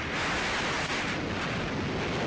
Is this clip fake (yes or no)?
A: no